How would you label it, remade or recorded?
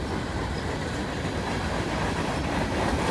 recorded